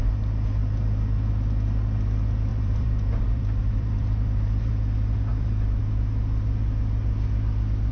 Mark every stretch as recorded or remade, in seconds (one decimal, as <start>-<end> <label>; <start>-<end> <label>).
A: 0.0-2.5 recorded; 2.5-4.7 remade; 4.7-5.3 recorded; 5.3-5.8 remade; 5.8-7.9 recorded

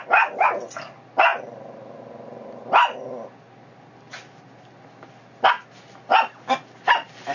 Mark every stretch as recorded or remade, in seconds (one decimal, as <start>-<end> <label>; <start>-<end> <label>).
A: 0.0-7.3 recorded